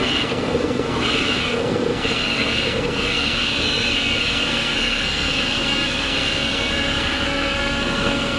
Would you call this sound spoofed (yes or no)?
yes